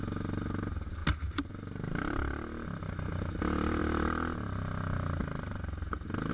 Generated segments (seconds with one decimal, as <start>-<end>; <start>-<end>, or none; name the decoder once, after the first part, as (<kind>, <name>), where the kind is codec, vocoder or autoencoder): none